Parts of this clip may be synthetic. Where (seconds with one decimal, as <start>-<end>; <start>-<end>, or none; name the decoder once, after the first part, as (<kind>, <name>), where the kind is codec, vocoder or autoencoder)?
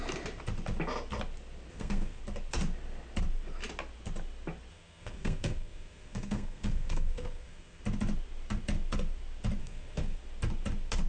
1.7-2.2 (codec, SNAC); 4.7-7.8; 9.6-10.2